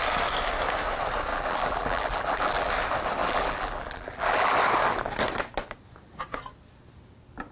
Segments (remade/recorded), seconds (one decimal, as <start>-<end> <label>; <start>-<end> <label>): 0.0-1.3 recorded; 1.3-2.7 remade; 2.7-3.2 recorded; 3.2-4.6 remade; 4.6-7.5 recorded